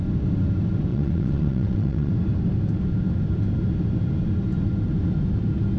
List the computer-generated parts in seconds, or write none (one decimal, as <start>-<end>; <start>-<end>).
0.9-2.1